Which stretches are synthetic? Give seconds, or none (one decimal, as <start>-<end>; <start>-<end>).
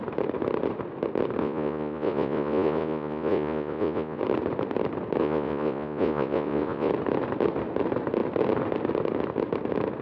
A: 1.4-4.2; 5.2-6.9